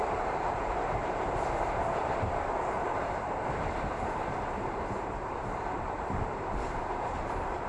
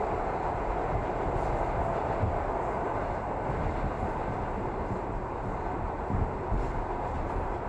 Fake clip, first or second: first